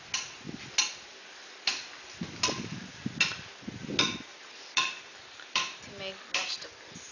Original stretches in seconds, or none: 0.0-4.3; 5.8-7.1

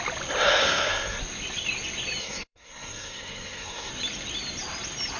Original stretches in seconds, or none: 0.0-0.6; 1.2-2.2; 3.9-5.2

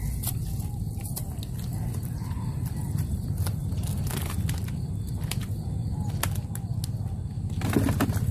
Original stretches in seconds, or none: 0.0-1.7; 2.2-8.3

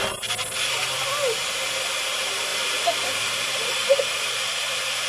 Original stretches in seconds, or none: 0.0-2.0

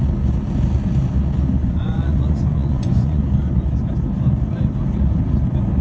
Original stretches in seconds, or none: 0.0-1.6; 3.2-5.8

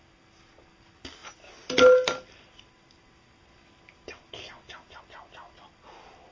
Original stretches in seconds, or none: 0.0-6.3

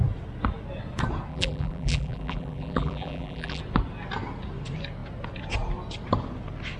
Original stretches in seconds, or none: 0.0-1.3; 3.6-6.8

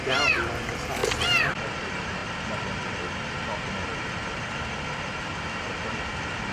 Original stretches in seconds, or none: 1.0-1.5